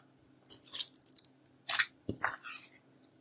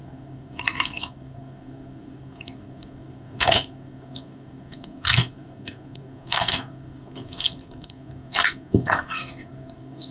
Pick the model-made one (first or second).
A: second